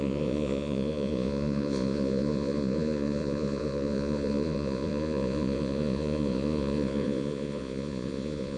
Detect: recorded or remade remade